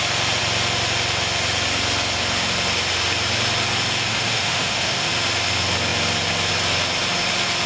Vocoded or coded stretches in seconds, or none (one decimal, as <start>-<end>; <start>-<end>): 4.1-5.1